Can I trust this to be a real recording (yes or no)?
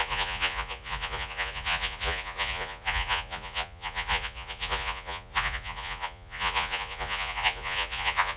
no